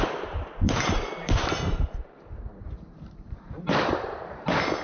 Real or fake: fake